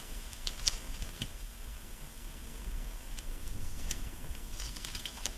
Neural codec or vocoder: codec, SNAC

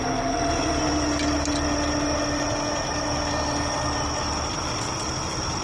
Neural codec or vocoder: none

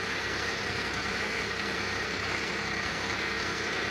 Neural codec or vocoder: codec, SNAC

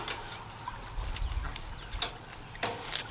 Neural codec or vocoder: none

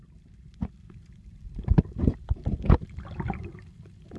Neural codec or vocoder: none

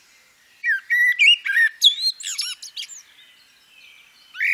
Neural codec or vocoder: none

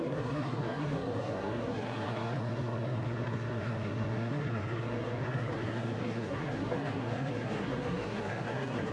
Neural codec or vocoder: codec, SNAC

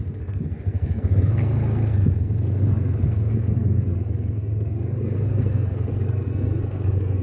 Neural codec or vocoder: codec, SNAC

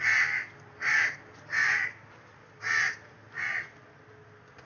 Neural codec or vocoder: none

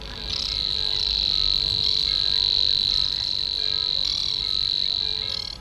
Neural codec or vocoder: none